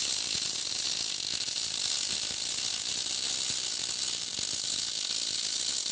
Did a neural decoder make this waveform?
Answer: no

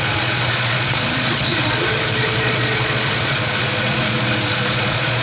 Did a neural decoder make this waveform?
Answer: yes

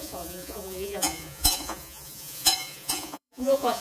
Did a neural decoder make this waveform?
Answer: yes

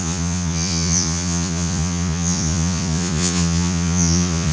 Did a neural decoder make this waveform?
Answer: yes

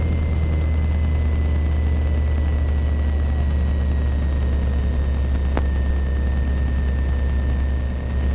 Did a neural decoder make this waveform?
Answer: no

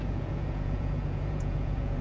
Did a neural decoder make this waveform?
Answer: yes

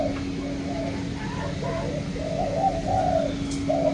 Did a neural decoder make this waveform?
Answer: no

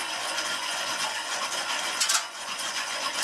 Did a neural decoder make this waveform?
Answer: yes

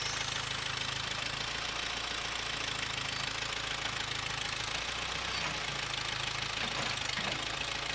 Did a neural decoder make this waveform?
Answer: no